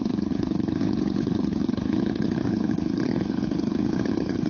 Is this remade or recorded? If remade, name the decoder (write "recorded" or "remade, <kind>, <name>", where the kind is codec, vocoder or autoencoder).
remade, codec, HILCodec